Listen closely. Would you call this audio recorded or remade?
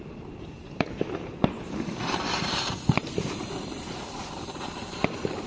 remade